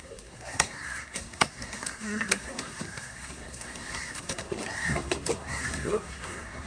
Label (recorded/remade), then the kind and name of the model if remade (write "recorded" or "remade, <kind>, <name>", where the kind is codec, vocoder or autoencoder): remade, codec, SNAC